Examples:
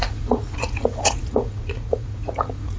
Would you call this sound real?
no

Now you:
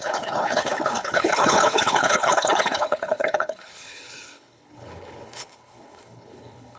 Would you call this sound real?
no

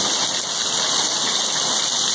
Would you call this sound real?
yes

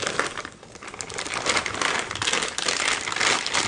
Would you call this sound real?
yes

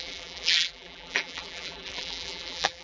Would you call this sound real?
no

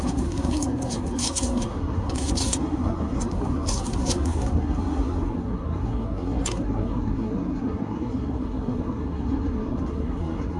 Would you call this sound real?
no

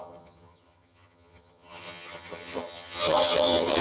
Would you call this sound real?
no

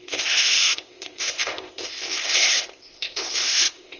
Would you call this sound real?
no